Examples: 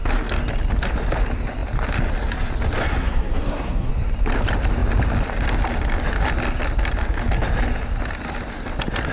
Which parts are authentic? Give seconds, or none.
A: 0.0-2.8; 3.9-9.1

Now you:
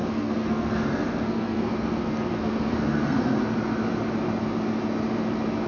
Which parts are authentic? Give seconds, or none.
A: 3.4-5.7

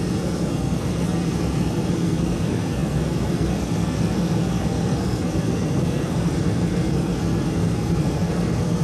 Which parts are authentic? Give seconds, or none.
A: none

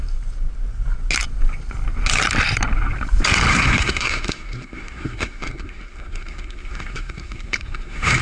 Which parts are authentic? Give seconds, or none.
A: 0.0-3.5

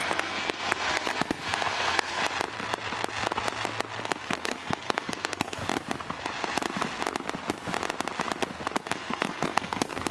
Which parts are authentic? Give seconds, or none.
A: 2.2-4.0; 5.6-8.9

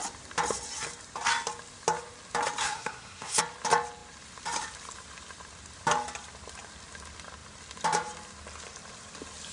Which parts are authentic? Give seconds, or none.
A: 0.0-2.6; 3.4-9.5

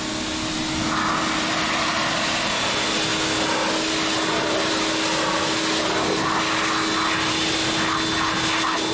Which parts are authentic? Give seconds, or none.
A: 0.0-8.9

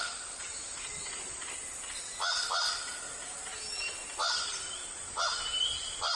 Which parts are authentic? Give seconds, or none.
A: 0.0-6.2